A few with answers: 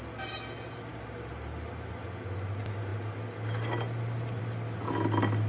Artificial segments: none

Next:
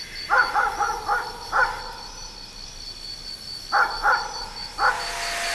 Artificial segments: 0.4-1.0 (vocoder, Vocos)

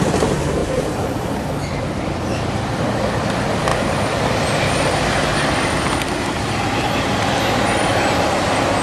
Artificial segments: 0.6-1.4 (vocoder, BigVGAN v2); 3.7-4.7

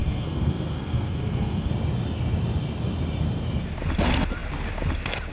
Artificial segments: 0.0-1.7 (codec, SNAC)

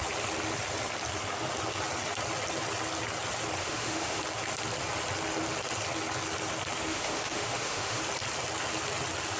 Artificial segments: 3.6-4.2 (autoencoder, DAC-VAE); 6.9-8.0

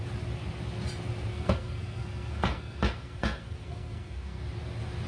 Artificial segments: 1.3-4.4 (codec, SNAC)

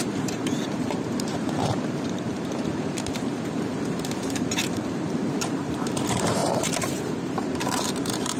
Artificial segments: 0.0-8.4 (vocoder, BigVGAN v2)